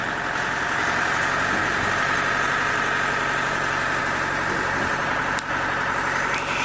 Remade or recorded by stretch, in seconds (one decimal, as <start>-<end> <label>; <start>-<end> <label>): 0.0-6.6 recorded